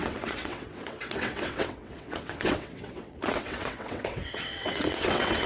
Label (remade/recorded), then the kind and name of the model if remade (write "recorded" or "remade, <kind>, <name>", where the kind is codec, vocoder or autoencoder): remade, vocoder, WaveNeXt